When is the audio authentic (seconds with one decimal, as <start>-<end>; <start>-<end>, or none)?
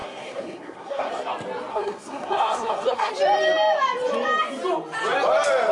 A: 1.1-1.7; 3.1-5.7